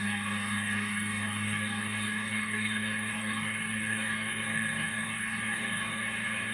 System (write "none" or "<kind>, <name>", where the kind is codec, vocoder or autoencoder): codec, DAC